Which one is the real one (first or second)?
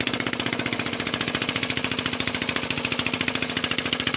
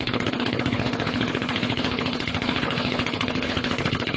first